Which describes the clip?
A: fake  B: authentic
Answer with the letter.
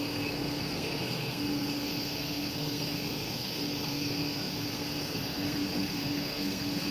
A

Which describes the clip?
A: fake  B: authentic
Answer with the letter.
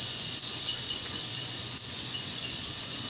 A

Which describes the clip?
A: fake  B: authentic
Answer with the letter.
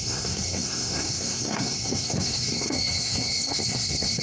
A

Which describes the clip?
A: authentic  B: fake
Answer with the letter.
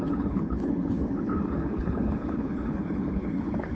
B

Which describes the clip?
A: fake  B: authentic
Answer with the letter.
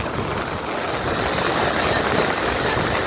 B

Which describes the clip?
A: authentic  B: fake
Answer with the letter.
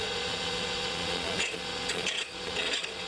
B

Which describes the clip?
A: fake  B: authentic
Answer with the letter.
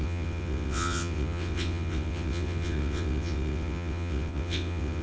A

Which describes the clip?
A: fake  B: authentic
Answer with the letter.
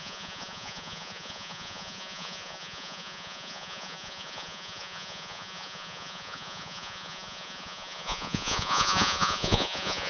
A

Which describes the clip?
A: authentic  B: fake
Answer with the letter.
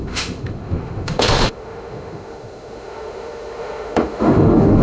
B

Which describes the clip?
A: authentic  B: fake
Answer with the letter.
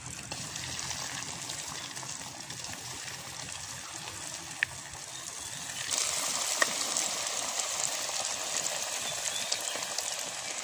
A